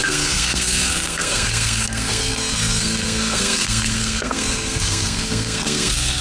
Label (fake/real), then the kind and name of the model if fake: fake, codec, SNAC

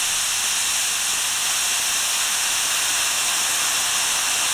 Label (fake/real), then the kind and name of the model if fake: real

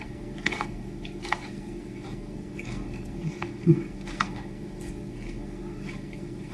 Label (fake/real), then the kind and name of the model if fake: fake, codec, SNAC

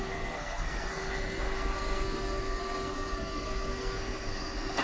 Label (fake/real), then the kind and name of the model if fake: fake, codec, SNAC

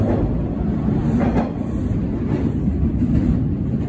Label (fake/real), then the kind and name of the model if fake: real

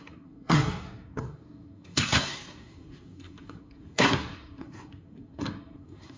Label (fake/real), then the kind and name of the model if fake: fake, codec, SNAC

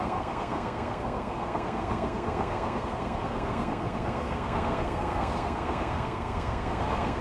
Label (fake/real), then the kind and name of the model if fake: fake, codec, SNAC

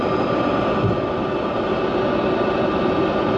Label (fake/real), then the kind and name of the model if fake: real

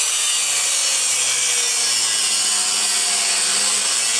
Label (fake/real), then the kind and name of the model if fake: real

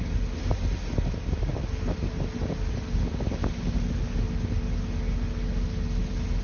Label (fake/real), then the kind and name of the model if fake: real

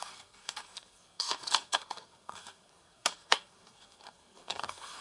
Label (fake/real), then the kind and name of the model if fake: fake, codec, SNAC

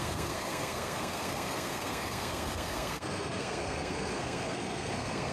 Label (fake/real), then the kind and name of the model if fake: fake, codec, SNAC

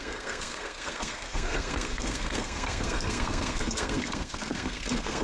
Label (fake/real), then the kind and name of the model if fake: fake, codec, SNAC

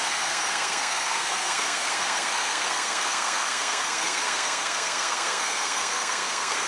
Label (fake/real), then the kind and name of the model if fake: fake, codec, SNAC